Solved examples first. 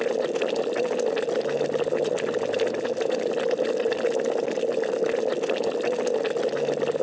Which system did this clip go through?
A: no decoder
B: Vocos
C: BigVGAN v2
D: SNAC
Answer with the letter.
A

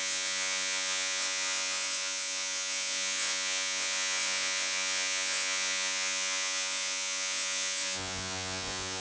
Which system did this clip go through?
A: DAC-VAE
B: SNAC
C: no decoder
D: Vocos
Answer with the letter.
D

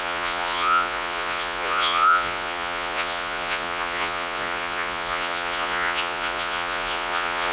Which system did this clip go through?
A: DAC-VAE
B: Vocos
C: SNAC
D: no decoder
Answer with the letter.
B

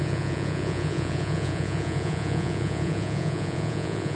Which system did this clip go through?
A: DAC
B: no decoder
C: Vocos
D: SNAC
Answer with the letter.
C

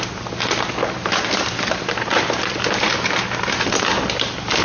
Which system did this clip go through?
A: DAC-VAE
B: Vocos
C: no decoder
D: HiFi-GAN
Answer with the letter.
C